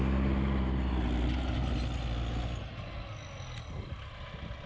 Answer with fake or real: real